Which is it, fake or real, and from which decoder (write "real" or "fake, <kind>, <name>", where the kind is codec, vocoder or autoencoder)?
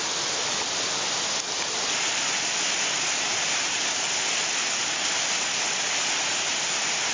real